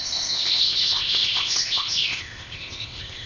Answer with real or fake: fake